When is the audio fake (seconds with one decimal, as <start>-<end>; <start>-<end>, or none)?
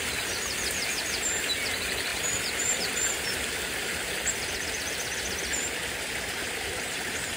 2.1-3.2